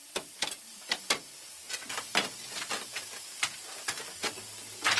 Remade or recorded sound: recorded